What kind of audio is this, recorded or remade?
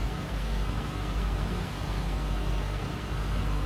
remade